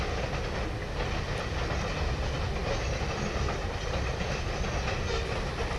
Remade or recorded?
recorded